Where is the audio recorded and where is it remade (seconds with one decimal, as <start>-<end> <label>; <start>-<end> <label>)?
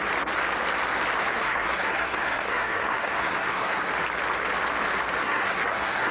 0.0-1.2 recorded; 1.2-3.9 remade; 3.9-5.2 recorded; 5.2-6.1 remade